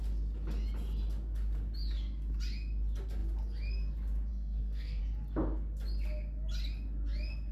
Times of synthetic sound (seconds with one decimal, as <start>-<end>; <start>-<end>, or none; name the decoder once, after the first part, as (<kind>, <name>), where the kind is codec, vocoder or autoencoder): 4.3-5.0 (codec, SNAC)